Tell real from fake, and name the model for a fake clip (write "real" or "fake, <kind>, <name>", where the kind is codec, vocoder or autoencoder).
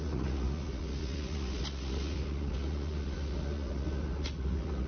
fake, vocoder, Vocos